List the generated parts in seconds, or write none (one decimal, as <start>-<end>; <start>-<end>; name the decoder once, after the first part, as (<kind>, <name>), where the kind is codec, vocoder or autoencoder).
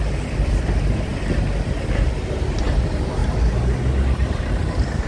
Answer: 0.0-1.1 (vocoder, BigVGAN v2); 2.6-3.2; 4.4-5.1